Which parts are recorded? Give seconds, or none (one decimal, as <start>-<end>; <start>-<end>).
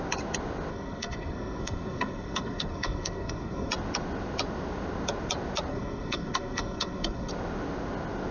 0.0-0.7; 3.7-5.7; 7.3-8.3